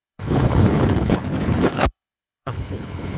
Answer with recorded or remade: remade